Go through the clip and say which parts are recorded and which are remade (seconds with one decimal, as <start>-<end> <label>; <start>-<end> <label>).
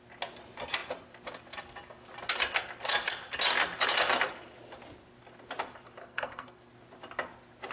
0.0-6.0 recorded; 6.0-6.7 remade; 6.7-7.7 recorded